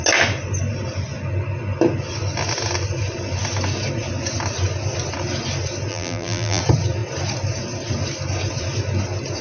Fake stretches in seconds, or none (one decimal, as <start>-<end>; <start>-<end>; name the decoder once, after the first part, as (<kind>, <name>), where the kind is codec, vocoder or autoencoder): 5.9-6.6 (vocoder, BigVGAN v2)